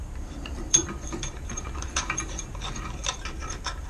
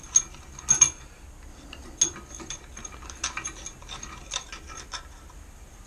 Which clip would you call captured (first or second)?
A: second